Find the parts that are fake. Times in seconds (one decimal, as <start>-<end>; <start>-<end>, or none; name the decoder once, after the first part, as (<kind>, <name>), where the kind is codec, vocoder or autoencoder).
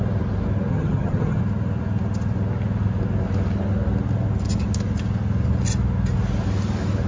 0.7-1.4 (vocoder, HiFi-GAN)